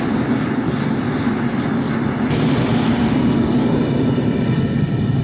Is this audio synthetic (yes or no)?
no